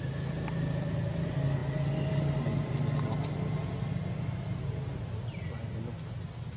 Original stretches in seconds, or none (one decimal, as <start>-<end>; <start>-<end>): 0.0-6.6